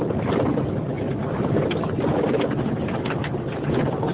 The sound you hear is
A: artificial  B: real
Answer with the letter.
B